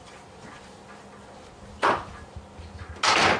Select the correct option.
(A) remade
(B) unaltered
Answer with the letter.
B